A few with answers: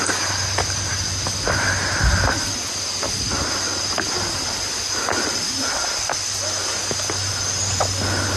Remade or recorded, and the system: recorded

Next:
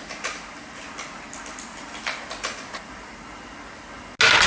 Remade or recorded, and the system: recorded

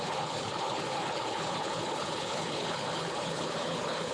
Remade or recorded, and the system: remade, codec, HILCodec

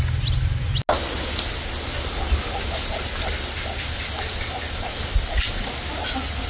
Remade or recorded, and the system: recorded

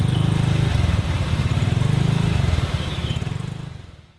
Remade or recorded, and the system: recorded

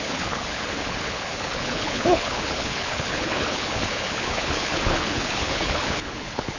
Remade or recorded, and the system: remade, codec, HILCodec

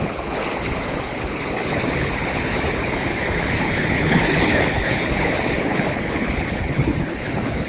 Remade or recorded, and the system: remade, codec, HILCodec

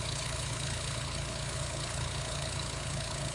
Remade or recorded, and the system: remade, codec, HILCodec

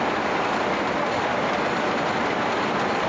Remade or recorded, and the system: recorded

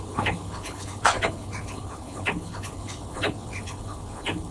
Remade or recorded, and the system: remade, codec, HILCodec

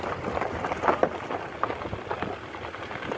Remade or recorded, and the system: recorded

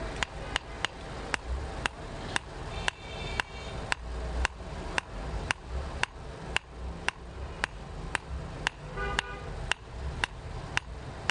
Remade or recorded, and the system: recorded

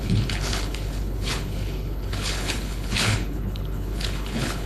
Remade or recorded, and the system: remade, codec, HILCodec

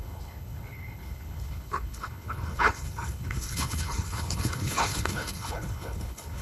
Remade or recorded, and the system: remade, codec, HILCodec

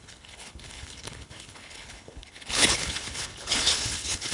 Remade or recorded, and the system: remade, codec, HILCodec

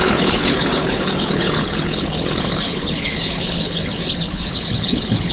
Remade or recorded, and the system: remade, codec, HILCodec